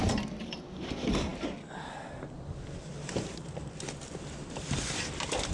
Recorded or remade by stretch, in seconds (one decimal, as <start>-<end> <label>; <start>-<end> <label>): 0.0-1.3 remade; 1.3-4.6 recorded; 4.6-5.5 remade